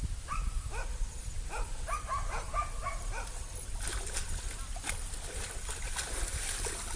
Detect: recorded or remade recorded